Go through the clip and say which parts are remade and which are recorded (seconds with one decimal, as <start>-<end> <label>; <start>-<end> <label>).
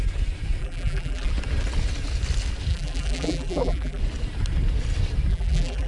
0.0-0.6 recorded; 0.6-1.3 remade; 1.3-2.7 recorded; 2.7-4.0 remade; 4.0-5.3 recorded; 5.3-5.9 remade